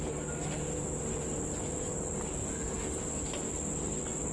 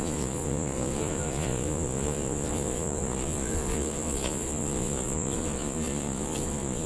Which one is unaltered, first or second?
first